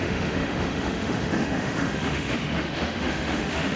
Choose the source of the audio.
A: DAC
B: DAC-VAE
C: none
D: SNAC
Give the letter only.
B